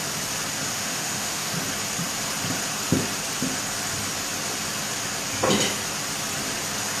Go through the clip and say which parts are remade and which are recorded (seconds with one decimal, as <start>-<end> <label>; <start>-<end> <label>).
0.0-0.7 recorded; 0.7-1.5 remade; 1.5-7.0 recorded